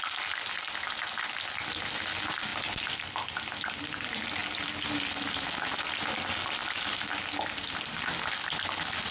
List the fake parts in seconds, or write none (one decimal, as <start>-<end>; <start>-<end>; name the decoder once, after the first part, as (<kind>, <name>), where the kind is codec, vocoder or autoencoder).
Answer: none